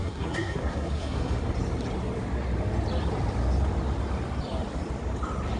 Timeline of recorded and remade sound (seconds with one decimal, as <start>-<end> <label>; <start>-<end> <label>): 0.0-1.4 remade; 1.4-5.6 recorded